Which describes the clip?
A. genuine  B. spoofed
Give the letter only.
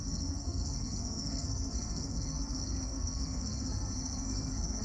B